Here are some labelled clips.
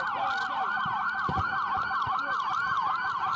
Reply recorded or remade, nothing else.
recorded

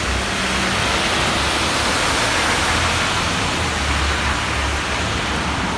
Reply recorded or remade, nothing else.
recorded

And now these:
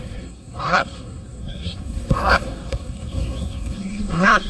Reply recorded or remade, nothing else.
remade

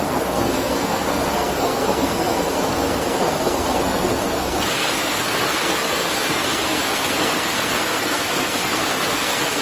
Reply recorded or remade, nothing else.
remade